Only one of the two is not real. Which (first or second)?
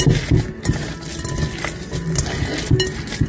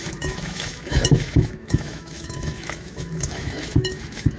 second